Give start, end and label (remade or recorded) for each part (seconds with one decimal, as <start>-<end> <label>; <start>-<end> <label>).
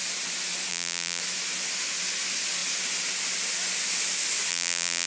0.0-0.7 recorded; 0.7-1.2 remade; 1.2-4.5 recorded; 4.5-5.1 remade